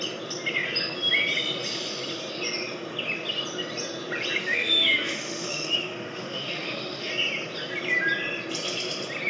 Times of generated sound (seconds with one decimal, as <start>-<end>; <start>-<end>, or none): 4.4-7.1